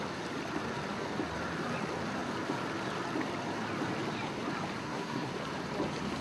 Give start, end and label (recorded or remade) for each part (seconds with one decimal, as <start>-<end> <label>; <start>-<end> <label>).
0.0-4.8 recorded; 4.8-5.3 remade; 5.3-6.2 recorded